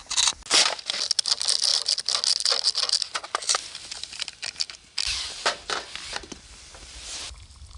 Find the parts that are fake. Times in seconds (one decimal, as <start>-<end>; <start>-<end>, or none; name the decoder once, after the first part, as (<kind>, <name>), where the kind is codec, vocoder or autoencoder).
3.4-7.8 (vocoder, BigVGAN v2)